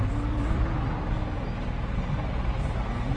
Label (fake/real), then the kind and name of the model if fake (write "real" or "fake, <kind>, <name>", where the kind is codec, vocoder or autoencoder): real